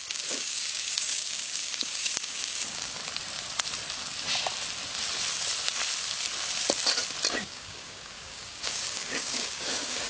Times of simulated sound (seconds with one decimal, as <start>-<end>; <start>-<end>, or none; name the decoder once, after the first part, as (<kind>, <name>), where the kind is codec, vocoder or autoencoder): 0.0-3.0 (codec, DAC); 7.3-10.1